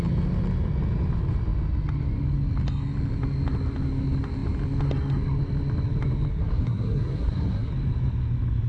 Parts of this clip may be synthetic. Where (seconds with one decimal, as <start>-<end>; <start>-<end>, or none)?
6.3-7.7